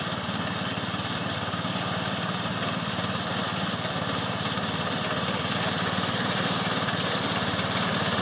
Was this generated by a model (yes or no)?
yes